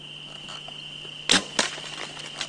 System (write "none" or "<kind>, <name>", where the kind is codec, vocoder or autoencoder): none